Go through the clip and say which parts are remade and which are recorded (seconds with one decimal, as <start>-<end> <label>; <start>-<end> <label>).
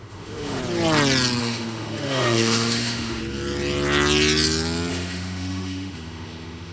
0.0-0.6 remade; 0.6-1.4 recorded; 1.4-3.2 remade; 3.2-4.9 recorded; 4.9-6.7 remade